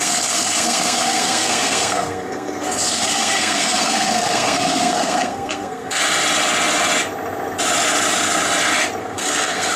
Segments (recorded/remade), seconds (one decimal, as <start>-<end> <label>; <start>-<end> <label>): 0.0-6.0 remade; 6.0-9.0 recorded; 9.0-9.8 remade